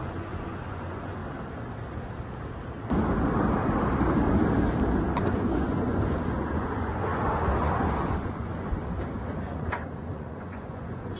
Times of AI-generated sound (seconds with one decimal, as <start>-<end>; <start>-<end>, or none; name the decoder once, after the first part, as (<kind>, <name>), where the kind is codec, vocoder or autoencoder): 0.0-1.2 (vocoder, Vocos); 5.2-8.8; 9.4-11.2

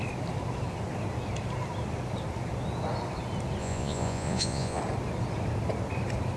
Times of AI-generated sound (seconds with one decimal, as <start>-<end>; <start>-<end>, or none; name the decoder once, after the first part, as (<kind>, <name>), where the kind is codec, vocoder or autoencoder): 3.6-4.8 (vocoder, Vocos)

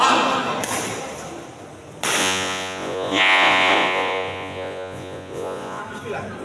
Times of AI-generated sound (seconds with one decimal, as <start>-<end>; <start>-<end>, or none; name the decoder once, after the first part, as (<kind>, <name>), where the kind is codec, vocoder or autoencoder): 2.2-5.8 (vocoder, Vocos)

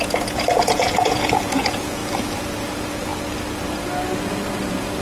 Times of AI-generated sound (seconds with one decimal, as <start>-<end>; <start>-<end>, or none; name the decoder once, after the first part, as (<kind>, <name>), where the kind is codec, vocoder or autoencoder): 0.0-2.0 (vocoder, Vocos); 2.6-3.1